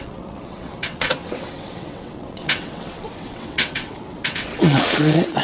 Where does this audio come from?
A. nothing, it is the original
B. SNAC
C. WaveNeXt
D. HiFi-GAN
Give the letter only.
C